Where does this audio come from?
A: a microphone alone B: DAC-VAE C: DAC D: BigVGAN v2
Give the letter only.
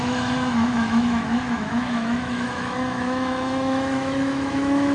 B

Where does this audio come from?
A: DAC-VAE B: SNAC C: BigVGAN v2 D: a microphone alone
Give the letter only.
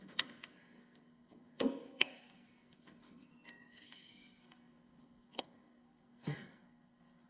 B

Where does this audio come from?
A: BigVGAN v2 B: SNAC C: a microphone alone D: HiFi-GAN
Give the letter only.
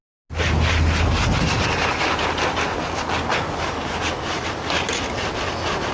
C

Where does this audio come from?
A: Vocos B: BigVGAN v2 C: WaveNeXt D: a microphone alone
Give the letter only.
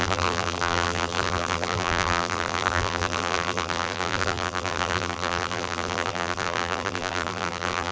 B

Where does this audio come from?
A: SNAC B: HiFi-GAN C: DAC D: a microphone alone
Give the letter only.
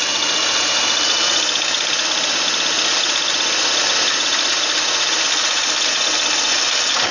D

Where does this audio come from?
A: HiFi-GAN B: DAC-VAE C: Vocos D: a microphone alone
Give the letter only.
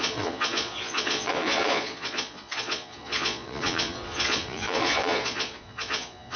C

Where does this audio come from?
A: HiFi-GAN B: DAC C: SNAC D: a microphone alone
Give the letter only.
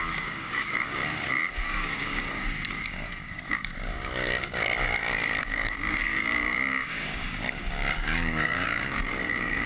B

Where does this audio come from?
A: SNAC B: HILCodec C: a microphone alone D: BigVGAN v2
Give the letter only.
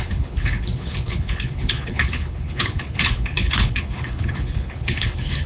B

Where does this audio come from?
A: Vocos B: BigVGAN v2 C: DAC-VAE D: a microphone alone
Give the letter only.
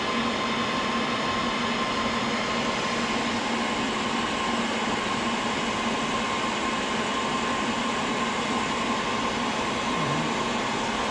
D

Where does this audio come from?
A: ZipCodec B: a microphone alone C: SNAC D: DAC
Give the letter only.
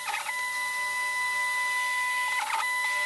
B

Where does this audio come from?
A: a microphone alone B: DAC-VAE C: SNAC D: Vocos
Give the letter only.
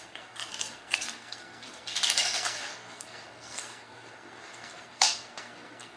C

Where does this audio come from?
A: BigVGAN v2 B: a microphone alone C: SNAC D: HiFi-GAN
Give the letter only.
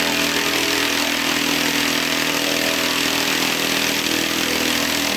B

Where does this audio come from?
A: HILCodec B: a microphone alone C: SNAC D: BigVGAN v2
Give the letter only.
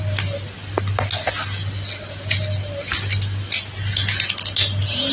B